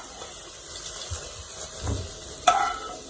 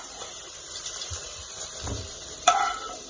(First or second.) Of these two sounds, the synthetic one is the second